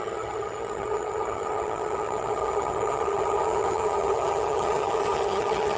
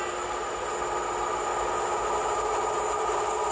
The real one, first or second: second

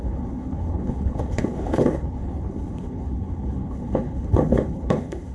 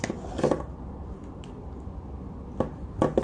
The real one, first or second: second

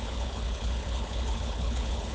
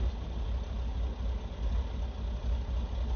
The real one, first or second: second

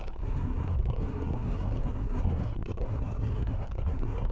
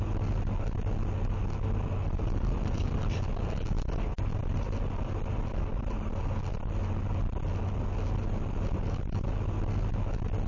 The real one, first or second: second